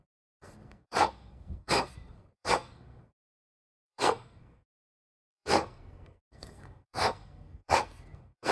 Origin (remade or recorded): remade